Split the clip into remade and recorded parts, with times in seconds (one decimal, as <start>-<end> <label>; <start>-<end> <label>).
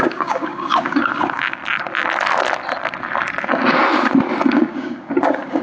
0.0-1.6 remade; 1.6-4.4 recorded; 4.4-5.6 remade